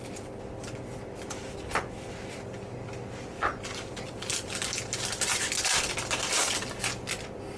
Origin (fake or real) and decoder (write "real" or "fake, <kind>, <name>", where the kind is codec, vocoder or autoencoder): real